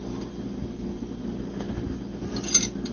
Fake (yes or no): no